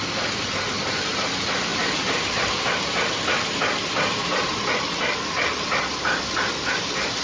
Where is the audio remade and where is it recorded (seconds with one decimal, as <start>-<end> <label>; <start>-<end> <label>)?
0.0-1.7 recorded; 1.7-4.9 remade; 4.9-7.2 recorded